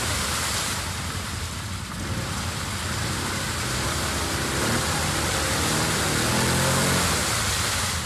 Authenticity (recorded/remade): recorded